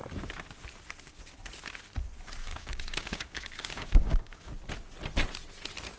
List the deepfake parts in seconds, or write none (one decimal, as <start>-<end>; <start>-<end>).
2.5-4.5